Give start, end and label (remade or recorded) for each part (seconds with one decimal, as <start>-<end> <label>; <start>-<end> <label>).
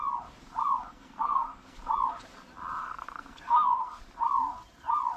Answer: 0.0-0.9 recorded; 0.9-1.8 remade; 1.8-2.8 recorded; 2.8-4.0 remade; 4.0-5.2 recorded